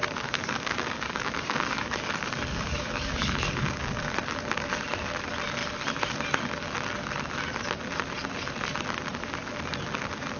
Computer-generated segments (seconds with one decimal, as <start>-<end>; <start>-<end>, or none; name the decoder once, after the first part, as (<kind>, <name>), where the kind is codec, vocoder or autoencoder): 0.0-4.0 (codec, DAC)

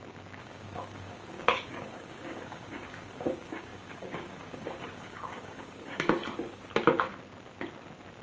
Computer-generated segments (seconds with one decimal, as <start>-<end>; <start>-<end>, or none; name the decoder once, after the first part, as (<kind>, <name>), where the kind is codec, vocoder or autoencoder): 0.0-6.2 (codec, DAC)